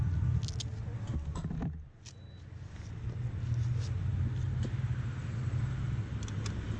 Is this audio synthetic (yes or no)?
no